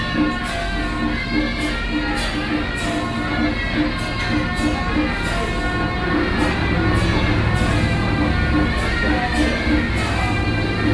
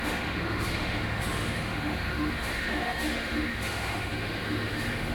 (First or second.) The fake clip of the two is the second